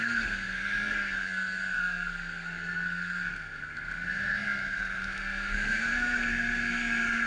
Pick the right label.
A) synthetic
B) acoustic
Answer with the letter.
A